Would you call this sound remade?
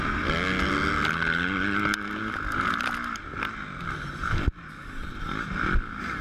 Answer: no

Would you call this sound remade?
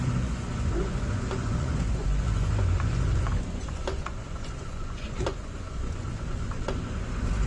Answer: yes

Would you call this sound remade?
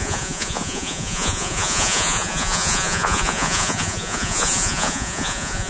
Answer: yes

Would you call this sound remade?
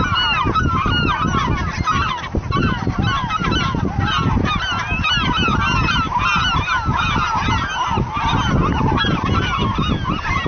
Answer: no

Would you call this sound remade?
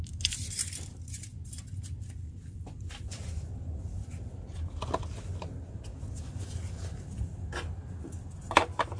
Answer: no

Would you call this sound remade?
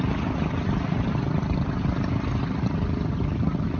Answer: no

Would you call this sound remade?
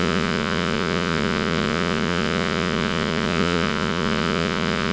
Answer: yes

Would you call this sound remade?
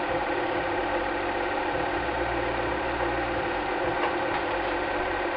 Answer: no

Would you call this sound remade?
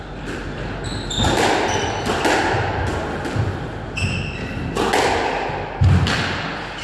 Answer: no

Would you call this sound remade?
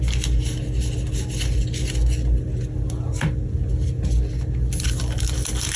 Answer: no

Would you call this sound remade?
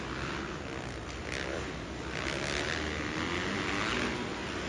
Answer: no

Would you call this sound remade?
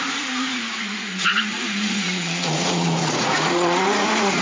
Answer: yes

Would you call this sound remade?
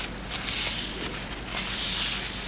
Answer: no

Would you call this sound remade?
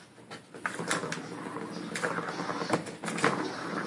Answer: no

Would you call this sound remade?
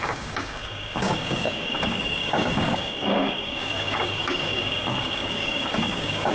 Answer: yes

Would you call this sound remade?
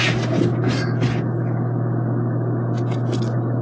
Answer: no